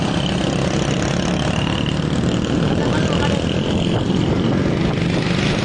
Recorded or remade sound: recorded